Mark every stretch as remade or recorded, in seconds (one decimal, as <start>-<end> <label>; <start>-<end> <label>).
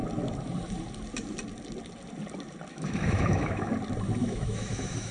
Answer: 0.0-2.7 recorded; 2.7-3.7 remade; 3.7-4.2 recorded; 4.2-5.1 remade